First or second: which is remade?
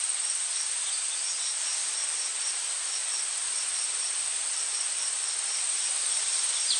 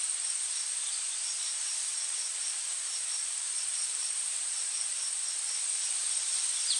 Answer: second